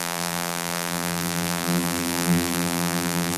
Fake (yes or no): yes